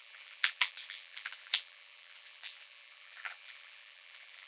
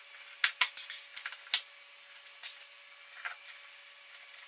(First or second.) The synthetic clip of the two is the first